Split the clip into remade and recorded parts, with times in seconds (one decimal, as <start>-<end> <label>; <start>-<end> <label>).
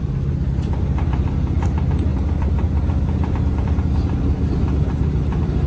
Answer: 0.0-5.7 recorded